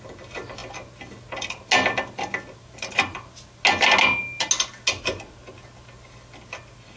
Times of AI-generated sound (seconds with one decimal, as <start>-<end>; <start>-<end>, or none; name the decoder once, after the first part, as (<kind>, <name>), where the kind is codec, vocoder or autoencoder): none